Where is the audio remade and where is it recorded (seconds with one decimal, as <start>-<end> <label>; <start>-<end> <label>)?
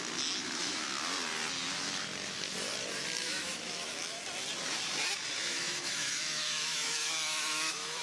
0.0-0.4 recorded; 0.4-1.0 remade; 1.0-3.2 recorded; 3.2-4.2 remade; 4.2-5.4 recorded; 5.4-8.0 remade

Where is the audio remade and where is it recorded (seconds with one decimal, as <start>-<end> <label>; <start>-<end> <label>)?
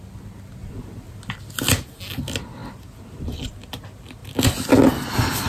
0.0-5.5 recorded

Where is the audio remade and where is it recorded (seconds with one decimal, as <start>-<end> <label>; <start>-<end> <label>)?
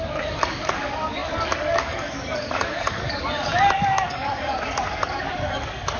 0.0-6.0 remade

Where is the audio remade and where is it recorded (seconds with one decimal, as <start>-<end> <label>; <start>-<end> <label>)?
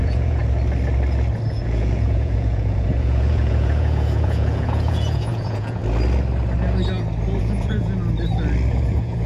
0.0-0.4 remade; 0.4-1.5 recorded; 1.5-5.8 remade; 5.8-7.4 recorded; 7.4-8.0 remade; 8.0-8.7 recorded; 8.7-9.3 remade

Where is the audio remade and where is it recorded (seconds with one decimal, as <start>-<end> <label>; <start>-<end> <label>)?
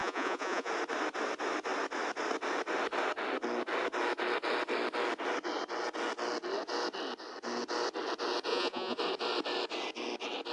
0.0-0.7 remade; 0.7-8.5 recorded; 8.5-9.0 remade; 9.0-10.5 recorded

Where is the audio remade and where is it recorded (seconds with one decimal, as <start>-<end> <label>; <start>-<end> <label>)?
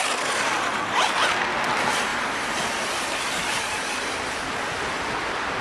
0.0-5.6 recorded